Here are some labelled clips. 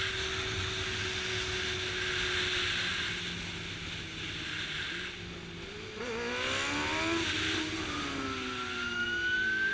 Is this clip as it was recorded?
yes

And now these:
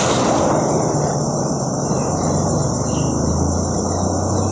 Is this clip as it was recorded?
yes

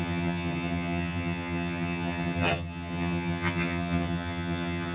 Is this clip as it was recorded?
no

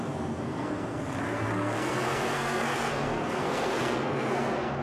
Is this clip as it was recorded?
no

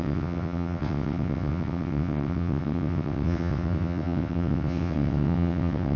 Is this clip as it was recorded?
no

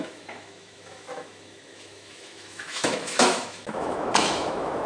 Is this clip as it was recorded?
no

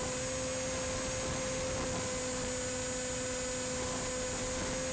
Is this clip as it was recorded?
yes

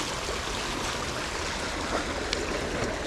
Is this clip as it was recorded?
yes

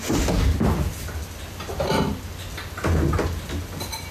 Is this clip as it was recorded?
yes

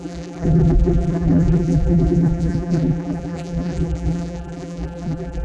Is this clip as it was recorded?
no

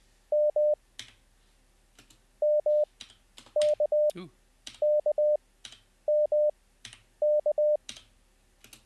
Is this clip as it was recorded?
yes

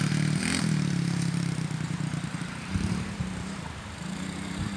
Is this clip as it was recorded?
no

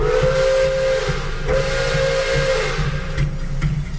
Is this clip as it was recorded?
yes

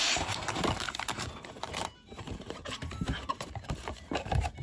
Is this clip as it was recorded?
no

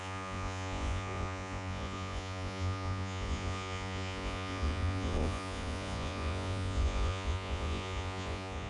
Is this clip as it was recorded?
no